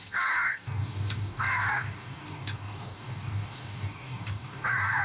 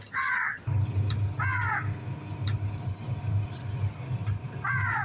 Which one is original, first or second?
second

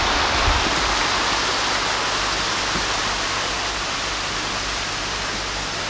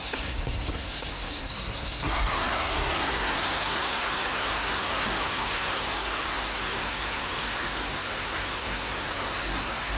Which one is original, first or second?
first